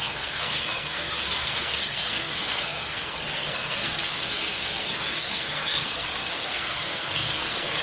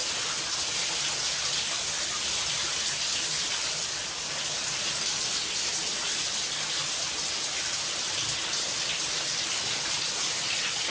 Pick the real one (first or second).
second